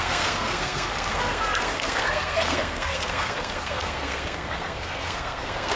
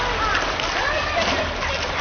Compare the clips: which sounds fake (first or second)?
first